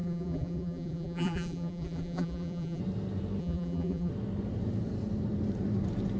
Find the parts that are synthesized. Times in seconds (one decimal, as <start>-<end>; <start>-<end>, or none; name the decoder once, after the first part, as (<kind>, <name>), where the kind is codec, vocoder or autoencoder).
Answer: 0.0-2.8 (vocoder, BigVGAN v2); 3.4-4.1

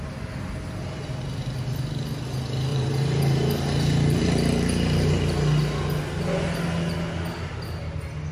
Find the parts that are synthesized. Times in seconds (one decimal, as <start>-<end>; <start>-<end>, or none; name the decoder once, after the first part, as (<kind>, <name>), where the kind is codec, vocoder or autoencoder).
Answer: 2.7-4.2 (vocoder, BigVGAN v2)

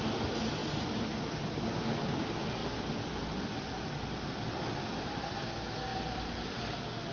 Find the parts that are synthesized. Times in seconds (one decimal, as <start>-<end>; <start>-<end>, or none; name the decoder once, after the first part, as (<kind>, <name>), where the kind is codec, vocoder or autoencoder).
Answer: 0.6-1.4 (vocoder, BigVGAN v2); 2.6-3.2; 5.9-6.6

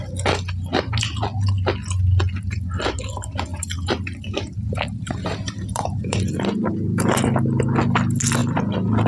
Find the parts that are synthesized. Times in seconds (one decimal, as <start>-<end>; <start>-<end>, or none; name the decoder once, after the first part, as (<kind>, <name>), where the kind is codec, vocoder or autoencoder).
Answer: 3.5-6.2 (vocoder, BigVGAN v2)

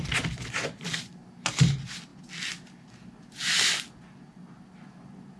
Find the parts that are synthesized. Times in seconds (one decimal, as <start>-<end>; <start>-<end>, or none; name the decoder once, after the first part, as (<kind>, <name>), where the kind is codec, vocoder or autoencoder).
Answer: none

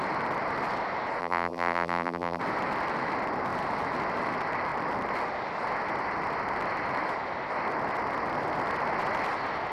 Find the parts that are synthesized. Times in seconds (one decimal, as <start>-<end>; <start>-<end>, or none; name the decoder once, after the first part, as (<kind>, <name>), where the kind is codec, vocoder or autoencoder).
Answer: 1.2-2.4 (vocoder, BigVGAN v2)

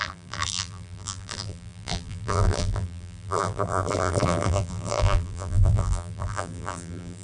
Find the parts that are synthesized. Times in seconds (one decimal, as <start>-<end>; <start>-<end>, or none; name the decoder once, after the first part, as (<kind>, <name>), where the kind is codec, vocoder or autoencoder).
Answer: 0.0-7.2 (vocoder, BigVGAN v2)

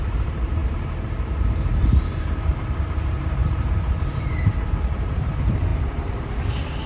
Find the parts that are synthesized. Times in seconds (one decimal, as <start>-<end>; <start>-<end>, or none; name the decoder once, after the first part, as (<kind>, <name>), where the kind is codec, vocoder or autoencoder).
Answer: 0.0-6.9 (vocoder, BigVGAN v2)